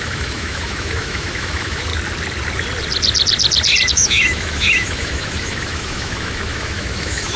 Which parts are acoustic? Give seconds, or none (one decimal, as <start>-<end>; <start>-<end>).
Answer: 1.9-3.9